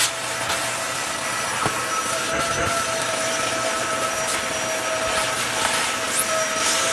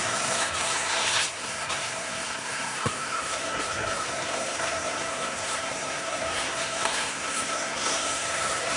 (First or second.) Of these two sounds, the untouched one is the first